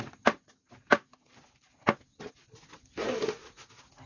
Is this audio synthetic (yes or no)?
no